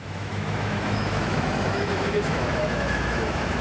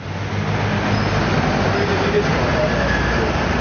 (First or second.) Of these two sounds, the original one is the second